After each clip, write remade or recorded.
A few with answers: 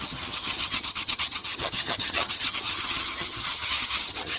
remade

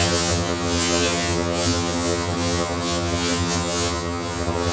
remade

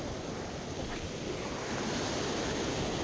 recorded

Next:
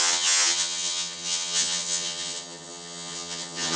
remade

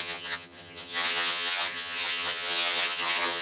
remade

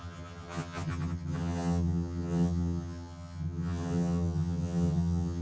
remade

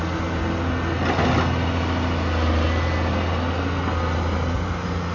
recorded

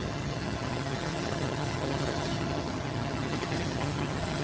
remade